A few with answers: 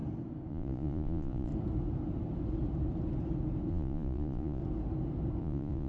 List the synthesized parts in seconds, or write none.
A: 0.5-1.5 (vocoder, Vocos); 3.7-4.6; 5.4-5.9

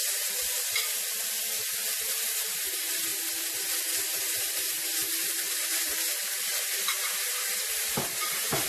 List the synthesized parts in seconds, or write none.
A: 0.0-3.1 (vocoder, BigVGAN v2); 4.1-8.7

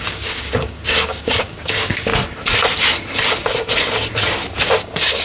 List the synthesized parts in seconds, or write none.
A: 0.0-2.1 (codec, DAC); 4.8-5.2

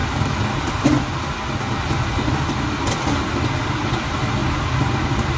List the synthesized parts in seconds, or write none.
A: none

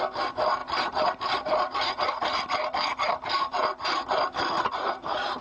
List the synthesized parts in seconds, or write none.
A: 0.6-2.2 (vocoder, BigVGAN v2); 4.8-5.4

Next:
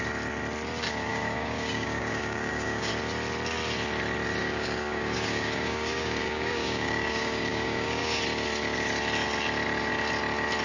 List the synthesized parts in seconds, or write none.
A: 1.1-2.9 (codec, DAC); 4.4-8.2